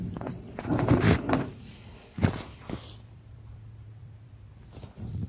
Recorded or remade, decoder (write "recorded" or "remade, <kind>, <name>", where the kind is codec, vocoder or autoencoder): remade, vocoder, BigVGAN v2